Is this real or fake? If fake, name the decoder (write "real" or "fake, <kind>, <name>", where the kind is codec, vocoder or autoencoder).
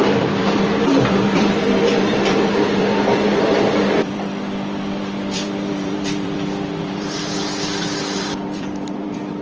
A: fake, vocoder, BigVGAN v2